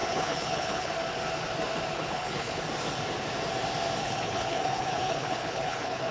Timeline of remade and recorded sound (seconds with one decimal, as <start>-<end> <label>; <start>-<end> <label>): 0.0-0.9 remade; 0.9-2.0 recorded; 2.0-2.6 remade; 2.6-4.0 recorded; 4.0-6.1 remade